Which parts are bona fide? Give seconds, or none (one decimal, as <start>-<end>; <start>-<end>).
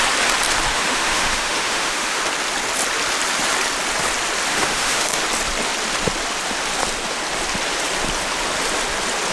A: 0.0-0.7; 2.2-4.5; 5.2-9.3